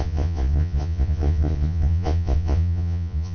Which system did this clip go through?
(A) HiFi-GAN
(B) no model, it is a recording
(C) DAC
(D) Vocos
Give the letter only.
D